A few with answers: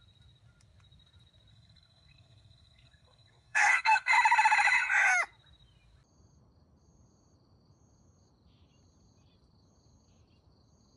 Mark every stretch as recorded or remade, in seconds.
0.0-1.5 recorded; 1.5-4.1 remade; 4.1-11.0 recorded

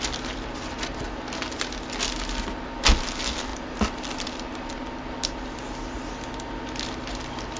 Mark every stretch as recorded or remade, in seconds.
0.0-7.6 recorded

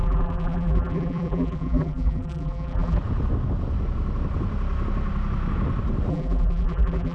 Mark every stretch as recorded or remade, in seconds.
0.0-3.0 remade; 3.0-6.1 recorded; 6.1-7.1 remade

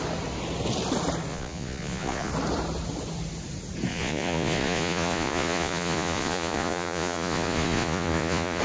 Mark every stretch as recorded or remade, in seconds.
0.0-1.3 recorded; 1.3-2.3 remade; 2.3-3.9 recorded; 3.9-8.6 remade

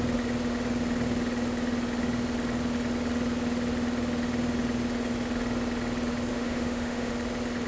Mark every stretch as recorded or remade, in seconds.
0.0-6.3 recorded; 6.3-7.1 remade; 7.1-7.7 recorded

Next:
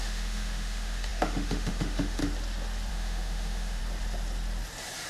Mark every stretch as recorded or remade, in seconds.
0.0-2.2 remade; 2.2-2.9 recorded; 2.9-3.8 remade; 3.8-5.1 recorded

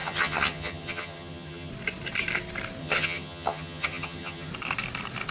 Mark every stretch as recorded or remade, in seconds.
0.0-1.7 remade; 1.7-2.8 recorded; 2.8-4.5 remade; 4.5-5.3 recorded

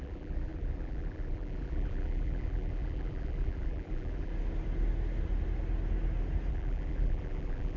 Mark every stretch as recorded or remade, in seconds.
0.0-4.3 remade; 4.3-6.5 recorded; 6.5-7.8 remade